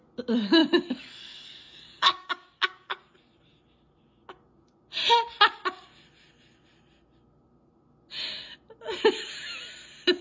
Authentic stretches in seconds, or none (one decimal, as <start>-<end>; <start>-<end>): 0.0-0.6; 3.0-10.2